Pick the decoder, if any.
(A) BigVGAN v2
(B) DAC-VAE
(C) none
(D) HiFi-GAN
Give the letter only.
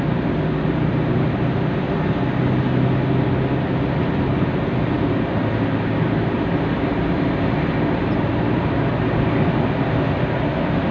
C